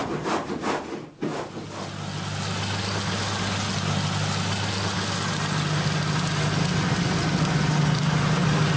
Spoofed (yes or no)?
no